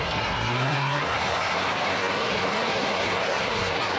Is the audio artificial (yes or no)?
yes